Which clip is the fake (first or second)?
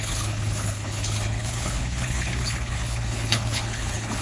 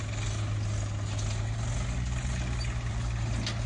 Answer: first